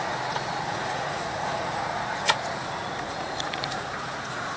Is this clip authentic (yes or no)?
no